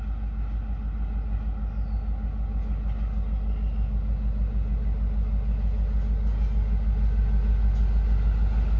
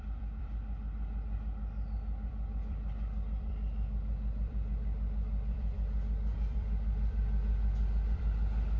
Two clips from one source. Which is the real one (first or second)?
first